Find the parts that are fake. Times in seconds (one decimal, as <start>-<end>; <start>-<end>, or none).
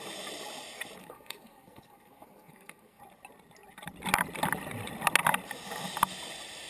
1.0-3.0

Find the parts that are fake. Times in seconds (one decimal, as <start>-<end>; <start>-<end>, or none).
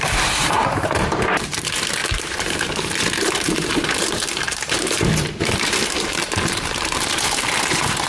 0.0-8.1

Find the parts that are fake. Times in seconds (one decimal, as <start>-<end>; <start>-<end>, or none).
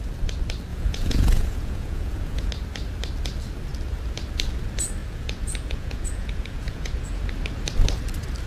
0.7-2.5; 5.0-7.2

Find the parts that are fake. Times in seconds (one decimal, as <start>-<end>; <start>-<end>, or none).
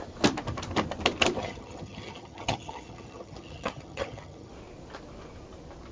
1.4-4.5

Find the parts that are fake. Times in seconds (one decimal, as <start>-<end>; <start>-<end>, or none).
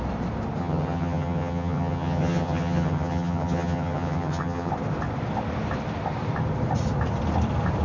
0.6-4.7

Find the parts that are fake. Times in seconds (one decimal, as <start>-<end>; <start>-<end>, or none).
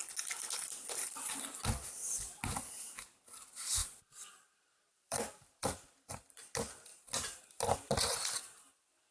3.8-6.4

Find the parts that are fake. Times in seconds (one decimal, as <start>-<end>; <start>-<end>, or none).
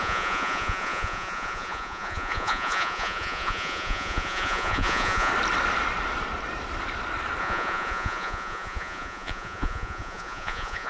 0.0-5.3; 7.4-10.9